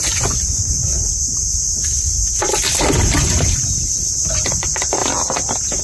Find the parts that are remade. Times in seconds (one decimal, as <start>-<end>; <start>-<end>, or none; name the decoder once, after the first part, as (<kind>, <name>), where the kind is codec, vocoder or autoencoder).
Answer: 0.0-0.8 (vocoder, Vocos); 4.3-5.0